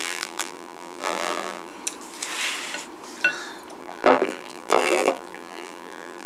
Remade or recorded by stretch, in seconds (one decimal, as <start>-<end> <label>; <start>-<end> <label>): 0.0-1.7 remade; 1.7-3.8 recorded; 3.8-6.3 remade